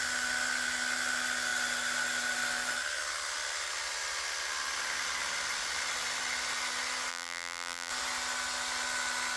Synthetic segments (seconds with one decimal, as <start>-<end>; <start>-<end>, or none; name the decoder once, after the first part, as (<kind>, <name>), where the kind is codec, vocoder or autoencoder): 7.1-7.9 (vocoder, BigVGAN v2)